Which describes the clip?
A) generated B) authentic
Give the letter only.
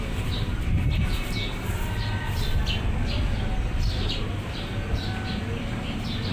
B